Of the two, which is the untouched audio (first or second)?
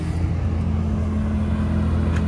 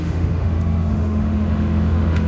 first